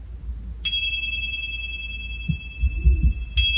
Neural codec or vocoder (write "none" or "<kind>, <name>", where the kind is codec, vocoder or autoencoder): none